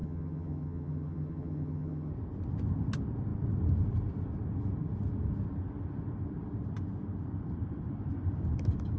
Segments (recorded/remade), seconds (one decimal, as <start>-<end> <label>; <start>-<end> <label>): 0.0-2.1 remade; 2.1-9.0 recorded